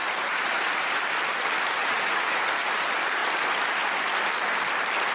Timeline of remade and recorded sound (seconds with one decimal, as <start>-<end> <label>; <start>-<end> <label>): 0.0-1.0 remade; 1.0-1.8 recorded; 1.8-2.7 remade; 2.7-5.1 recorded